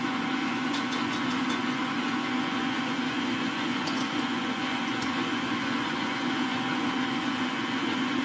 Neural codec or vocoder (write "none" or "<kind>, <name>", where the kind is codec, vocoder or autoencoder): vocoder, Vocos